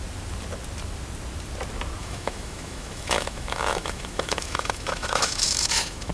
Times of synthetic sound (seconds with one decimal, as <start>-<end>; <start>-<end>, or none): 2.0-6.1